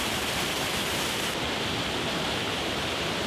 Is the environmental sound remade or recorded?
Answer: recorded